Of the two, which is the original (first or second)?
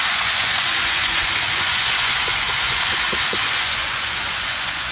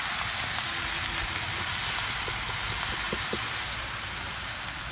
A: second